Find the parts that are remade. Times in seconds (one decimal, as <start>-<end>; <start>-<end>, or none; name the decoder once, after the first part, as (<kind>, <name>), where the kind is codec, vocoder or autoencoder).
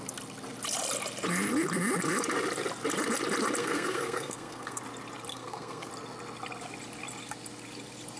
3.6-4.8 (codec, SNAC); 5.3-5.9